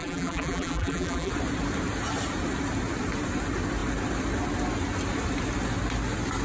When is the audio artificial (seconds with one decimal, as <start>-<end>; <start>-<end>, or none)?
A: 0.0-1.3